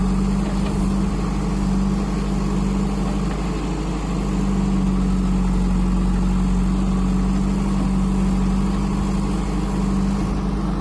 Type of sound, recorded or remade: recorded